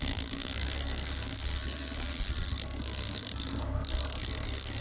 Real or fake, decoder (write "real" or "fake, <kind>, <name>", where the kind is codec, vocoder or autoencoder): fake, codec, SNAC